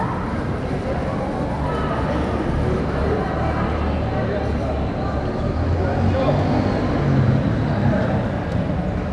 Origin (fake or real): real